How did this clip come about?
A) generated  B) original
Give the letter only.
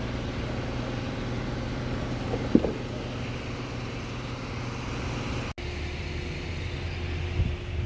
B